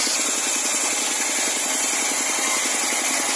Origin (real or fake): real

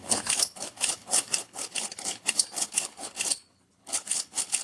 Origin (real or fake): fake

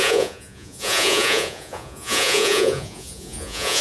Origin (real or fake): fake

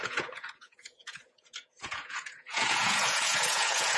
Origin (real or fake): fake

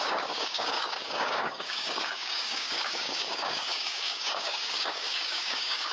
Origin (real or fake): fake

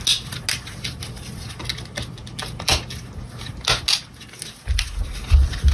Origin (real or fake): real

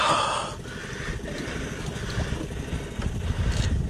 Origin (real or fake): real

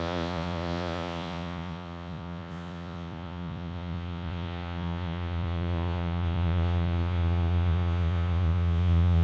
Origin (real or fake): fake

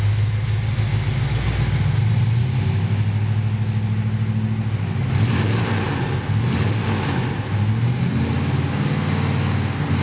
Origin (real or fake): real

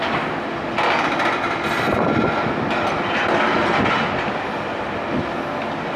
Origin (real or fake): real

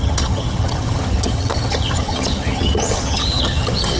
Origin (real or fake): fake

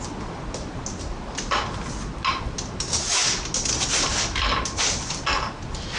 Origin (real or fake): real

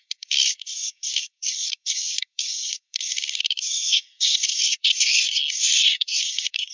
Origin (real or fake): fake